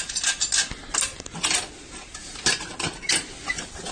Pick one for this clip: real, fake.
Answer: real